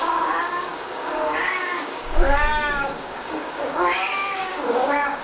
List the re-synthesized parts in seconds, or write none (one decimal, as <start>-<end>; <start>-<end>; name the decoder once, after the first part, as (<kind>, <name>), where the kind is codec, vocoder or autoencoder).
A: 0.0-5.2 (codec, DAC)

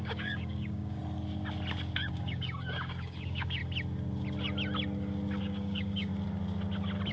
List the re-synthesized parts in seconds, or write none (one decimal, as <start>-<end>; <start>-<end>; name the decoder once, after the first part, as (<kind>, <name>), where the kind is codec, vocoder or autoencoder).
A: 0.0-1.0 (codec, DAC); 2.1-3.6; 5.4-6.1

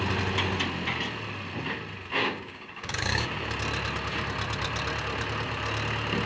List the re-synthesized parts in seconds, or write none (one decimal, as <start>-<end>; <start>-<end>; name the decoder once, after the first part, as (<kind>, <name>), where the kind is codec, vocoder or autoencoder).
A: 2.2-3.3 (codec, DAC)

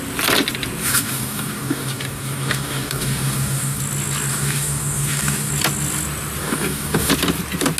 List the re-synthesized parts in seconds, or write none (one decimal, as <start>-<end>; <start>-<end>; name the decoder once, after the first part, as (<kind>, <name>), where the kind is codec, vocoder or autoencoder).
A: 0.8-3.8 (codec, DAC); 4.3-5.5; 6.4-7.1

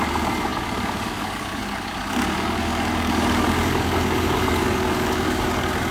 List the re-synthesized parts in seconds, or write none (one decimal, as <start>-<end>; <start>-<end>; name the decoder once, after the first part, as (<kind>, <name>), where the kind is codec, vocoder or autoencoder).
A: 0.0-5.9 (codec, DAC)

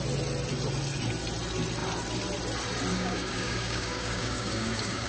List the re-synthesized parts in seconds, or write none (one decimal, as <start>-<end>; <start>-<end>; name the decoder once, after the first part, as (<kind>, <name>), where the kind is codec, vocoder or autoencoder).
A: 2.9-5.1 (codec, DAC)

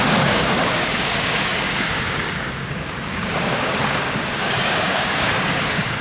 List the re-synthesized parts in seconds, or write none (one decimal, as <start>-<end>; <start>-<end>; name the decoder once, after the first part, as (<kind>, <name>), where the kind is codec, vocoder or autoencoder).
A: 0.0-6.0 (codec, DAC)

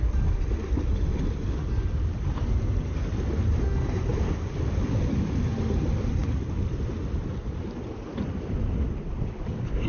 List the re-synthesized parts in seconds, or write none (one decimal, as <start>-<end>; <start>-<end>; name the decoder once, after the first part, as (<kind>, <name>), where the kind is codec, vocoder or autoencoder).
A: none